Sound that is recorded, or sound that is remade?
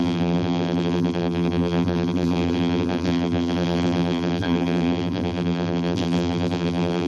remade